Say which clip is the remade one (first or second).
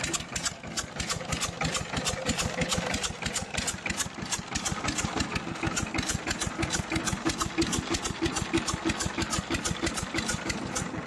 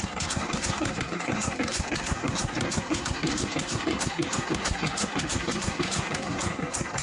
second